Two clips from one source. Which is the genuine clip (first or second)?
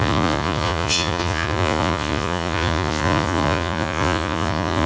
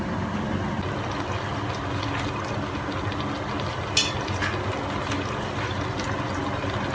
second